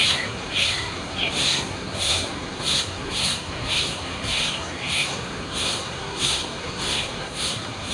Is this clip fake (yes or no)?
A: yes